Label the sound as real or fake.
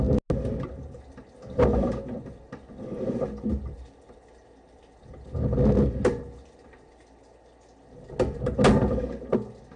real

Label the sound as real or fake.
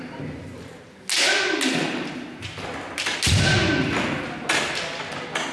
real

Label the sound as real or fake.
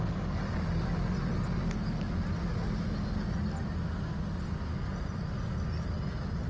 real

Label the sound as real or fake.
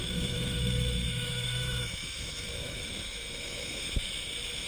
fake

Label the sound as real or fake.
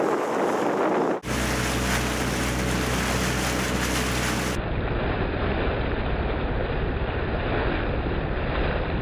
real